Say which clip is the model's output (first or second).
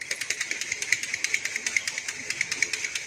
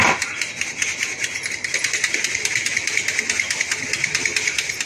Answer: first